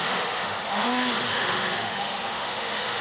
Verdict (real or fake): fake